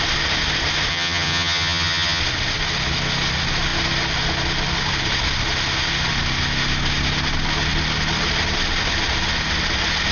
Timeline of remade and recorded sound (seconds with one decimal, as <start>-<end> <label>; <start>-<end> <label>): 0.0-0.9 recorded; 0.9-2.2 remade; 2.2-10.1 recorded